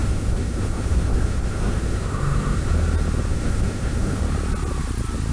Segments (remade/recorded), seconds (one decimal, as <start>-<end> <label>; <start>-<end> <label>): 0.0-2.7 remade; 2.7-3.3 recorded; 3.3-4.2 remade; 4.2-5.3 recorded